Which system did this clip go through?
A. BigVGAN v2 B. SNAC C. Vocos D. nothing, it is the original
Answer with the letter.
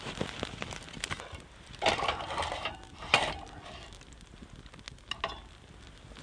D